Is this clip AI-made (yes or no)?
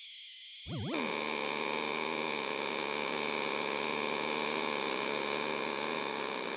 no